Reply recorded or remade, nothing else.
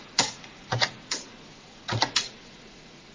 remade